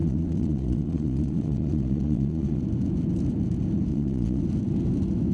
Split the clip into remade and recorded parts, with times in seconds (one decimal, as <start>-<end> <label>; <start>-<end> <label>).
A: 0.0-2.6 remade; 2.6-3.9 recorded; 3.9-4.4 remade; 4.4-5.3 recorded